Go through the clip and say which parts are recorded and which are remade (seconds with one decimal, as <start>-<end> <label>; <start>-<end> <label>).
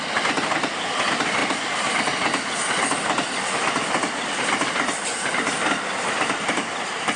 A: 0.0-7.2 recorded